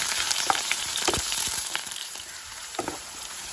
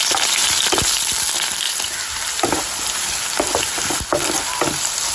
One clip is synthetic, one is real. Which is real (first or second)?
second